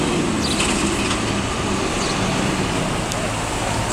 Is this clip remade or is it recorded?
recorded